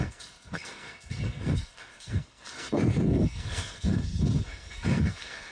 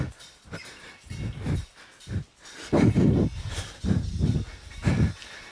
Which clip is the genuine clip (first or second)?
second